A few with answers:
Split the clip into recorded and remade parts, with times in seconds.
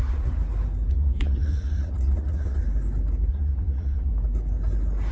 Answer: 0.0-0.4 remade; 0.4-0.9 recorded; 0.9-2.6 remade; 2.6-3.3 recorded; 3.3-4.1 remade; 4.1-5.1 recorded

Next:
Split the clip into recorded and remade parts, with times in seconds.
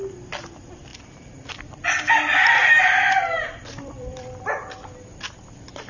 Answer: 0.0-0.9 recorded; 0.9-4.4 remade; 4.4-5.9 recorded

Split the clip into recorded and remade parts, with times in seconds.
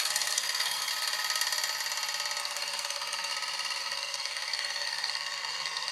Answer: 0.0-0.9 remade; 0.9-2.4 recorded; 2.4-3.3 remade; 3.3-3.8 recorded; 3.8-5.9 remade